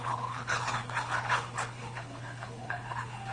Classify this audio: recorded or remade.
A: remade